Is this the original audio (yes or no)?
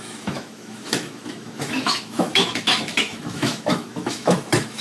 no